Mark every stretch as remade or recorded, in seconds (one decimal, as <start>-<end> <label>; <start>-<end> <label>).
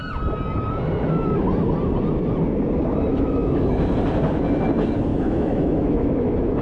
0.0-3.1 recorded; 3.1-3.9 remade; 3.9-5.1 recorded; 5.1-6.6 remade